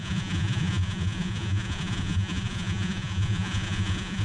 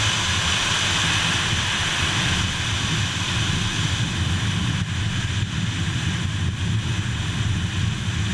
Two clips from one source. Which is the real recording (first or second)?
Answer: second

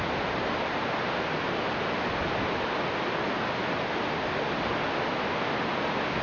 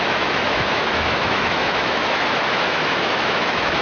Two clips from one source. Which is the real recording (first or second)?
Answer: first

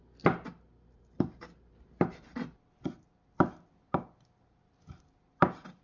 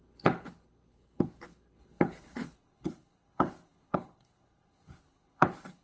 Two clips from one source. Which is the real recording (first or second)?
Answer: first